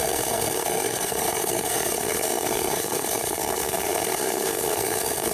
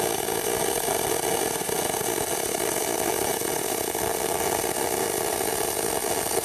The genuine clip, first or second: second